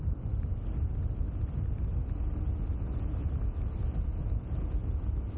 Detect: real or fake real